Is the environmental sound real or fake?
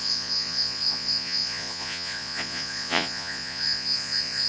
fake